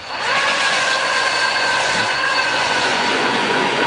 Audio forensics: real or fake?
fake